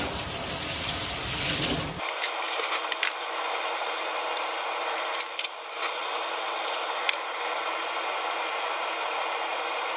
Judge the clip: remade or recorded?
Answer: recorded